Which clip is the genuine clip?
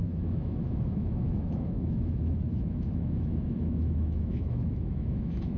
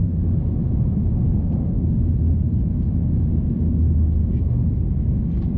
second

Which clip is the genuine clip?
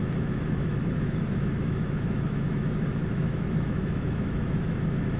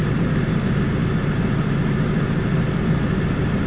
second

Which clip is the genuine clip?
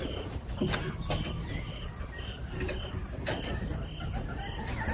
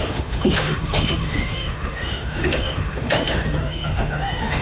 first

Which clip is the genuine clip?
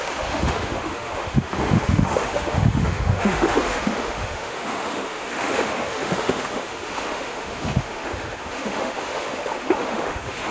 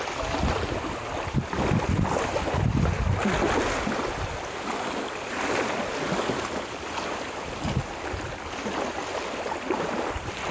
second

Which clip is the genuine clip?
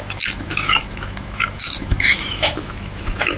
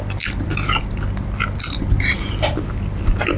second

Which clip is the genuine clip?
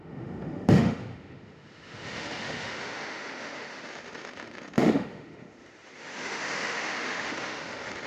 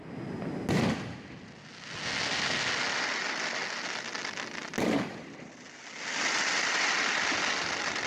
second